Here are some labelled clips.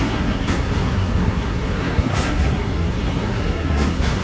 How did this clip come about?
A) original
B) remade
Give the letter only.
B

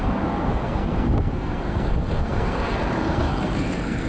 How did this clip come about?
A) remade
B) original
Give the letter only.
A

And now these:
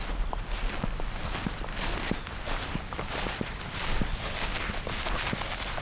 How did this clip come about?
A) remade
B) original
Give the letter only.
B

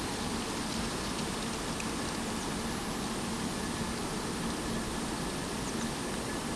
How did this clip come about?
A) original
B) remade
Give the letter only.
A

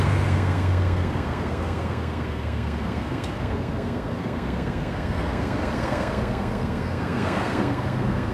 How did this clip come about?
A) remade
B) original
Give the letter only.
A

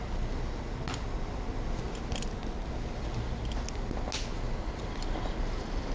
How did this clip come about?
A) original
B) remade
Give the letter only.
A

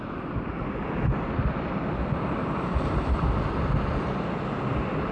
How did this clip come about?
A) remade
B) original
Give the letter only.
B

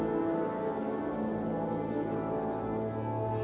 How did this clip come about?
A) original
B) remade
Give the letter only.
A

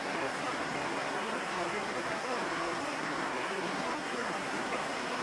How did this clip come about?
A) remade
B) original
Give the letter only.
A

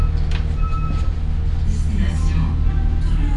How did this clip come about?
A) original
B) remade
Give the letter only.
A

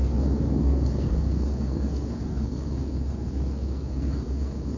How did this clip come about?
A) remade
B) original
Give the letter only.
A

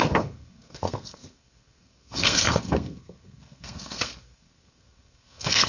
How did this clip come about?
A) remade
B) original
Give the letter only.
A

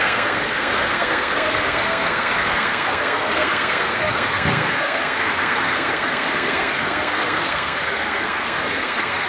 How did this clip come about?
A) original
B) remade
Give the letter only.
B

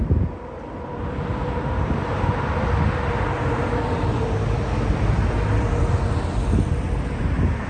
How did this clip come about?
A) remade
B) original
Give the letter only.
B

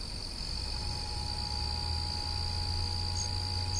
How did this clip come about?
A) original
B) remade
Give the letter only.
A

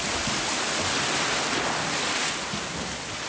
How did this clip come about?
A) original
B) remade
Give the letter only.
A